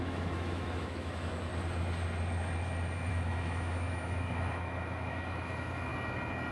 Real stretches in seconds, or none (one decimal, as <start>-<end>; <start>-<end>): 1.5-3.1; 5.9-6.5